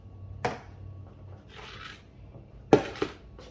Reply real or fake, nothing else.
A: real